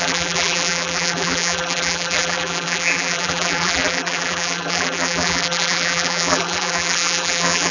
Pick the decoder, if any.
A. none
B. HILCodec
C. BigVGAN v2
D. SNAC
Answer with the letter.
C